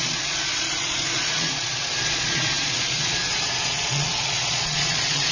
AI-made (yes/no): yes